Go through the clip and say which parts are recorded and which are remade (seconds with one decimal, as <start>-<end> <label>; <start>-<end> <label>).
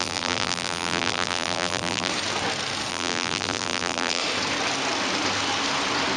0.0-2.1 remade; 2.1-2.9 recorded; 2.9-4.2 remade; 4.2-6.2 recorded